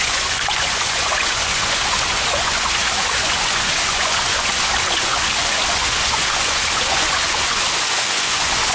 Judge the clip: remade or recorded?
remade